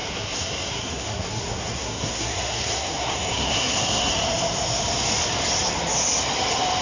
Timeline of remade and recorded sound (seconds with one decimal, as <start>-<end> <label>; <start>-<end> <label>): 0.0-4.1 remade; 4.1-6.8 recorded